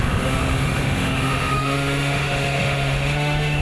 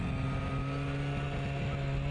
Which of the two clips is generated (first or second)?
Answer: first